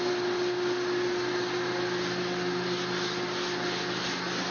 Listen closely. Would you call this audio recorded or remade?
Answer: recorded